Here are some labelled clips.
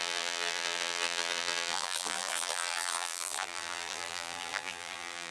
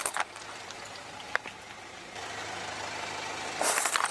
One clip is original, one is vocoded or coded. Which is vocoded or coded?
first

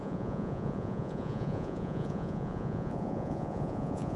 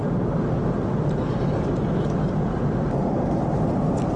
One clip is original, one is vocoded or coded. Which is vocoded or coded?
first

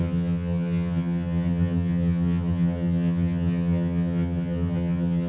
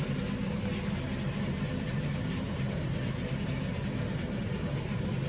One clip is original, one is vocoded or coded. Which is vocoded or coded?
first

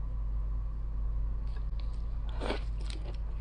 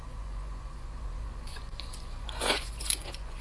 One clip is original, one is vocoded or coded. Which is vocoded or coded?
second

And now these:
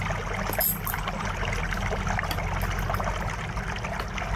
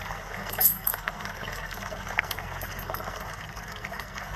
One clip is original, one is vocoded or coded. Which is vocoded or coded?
second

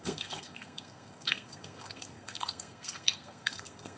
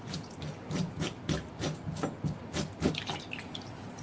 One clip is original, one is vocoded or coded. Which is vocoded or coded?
first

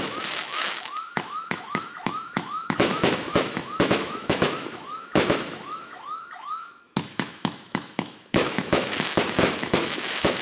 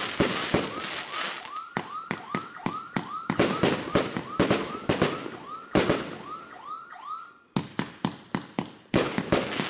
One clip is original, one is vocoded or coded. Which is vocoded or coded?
first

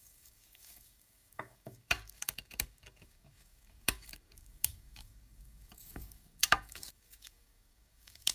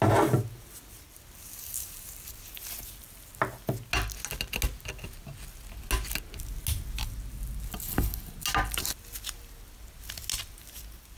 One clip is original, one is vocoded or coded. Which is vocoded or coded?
first